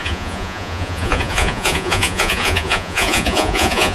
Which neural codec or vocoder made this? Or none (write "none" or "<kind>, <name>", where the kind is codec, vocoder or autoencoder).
vocoder, Vocos